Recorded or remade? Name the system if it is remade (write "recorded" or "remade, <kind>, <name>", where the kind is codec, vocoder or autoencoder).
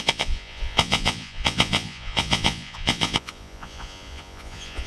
remade, vocoder, Vocos